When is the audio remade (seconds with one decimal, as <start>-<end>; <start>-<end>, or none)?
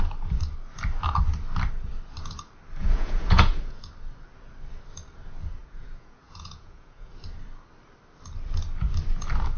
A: 2.8-3.8; 5.6-7.1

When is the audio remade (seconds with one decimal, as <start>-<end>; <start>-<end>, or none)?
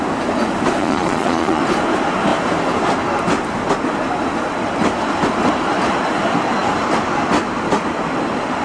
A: 0.8-1.6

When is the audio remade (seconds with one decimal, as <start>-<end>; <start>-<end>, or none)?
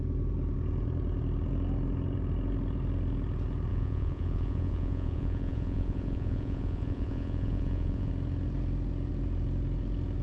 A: 3.7-8.1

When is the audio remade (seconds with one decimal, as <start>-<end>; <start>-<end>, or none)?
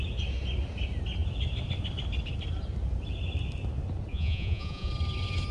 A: 4.1-4.9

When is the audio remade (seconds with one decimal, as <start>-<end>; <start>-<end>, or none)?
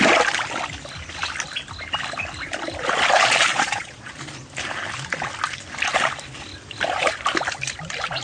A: 3.5-4.1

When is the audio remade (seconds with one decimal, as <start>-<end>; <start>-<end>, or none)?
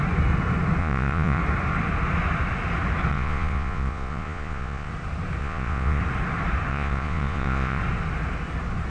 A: 0.8-1.4; 3.1-4.9; 5.4-6.0; 6.7-7.8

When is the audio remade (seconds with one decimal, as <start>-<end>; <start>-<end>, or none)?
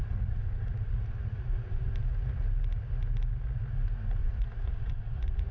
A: 0.0-1.9; 4.2-5.5